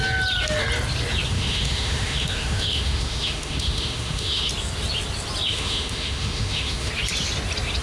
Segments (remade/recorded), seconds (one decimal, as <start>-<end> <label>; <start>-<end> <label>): 0.0-1.3 recorded; 1.3-4.5 remade; 4.5-5.5 recorded; 5.5-6.9 remade; 6.9-7.8 recorded